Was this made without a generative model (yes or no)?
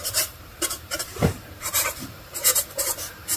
no